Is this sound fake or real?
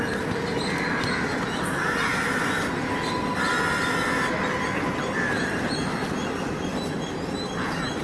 real